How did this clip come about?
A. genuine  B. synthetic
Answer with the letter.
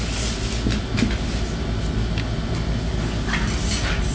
A